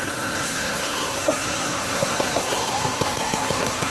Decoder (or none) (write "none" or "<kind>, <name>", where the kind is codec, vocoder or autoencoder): codec, SNAC